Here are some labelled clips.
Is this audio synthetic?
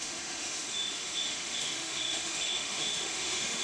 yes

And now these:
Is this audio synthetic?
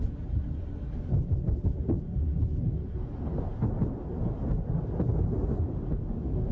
no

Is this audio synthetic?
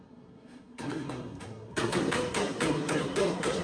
yes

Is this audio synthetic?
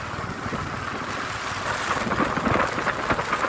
no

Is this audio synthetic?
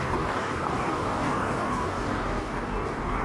yes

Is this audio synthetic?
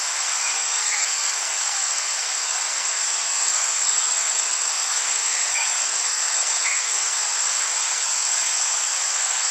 yes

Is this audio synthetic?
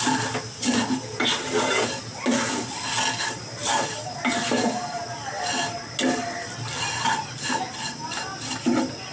no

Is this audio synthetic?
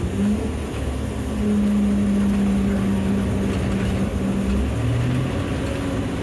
no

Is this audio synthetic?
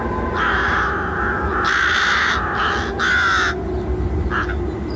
no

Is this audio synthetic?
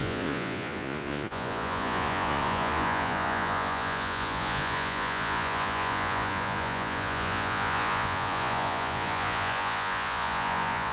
yes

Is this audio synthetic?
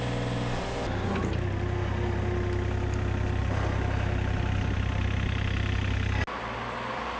no